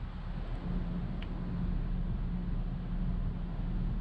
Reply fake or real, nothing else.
real